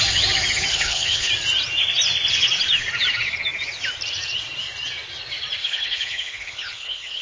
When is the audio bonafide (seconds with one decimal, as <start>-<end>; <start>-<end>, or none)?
0.0-0.7; 1.3-5.6